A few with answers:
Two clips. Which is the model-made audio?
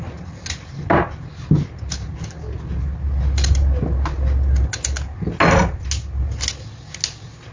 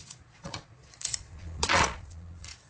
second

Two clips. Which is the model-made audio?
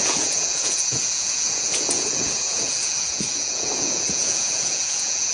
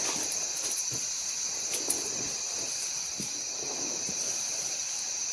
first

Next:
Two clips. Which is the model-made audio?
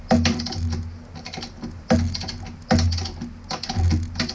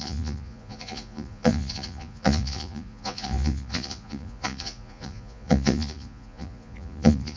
second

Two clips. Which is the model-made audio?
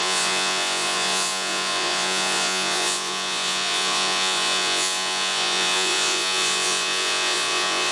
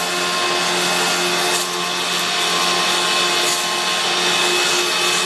first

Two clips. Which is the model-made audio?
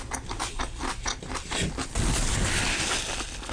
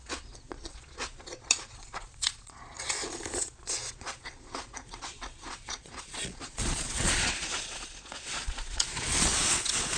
second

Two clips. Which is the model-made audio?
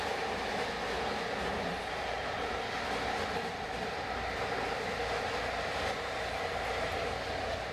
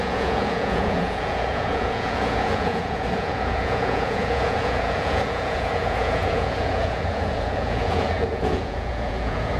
second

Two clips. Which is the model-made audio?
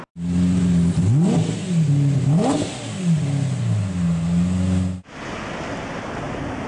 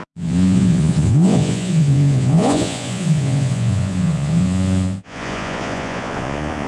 second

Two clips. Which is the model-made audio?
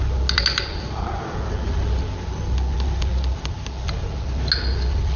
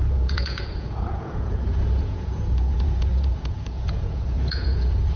second